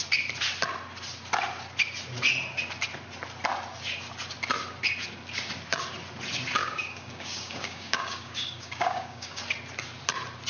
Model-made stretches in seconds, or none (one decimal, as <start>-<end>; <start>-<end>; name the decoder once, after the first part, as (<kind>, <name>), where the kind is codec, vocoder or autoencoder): 6.6-9.4 (codec, DAC)